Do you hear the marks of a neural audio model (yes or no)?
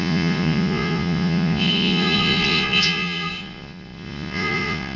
yes